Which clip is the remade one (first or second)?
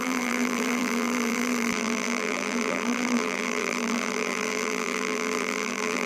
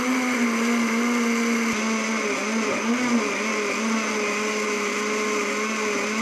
first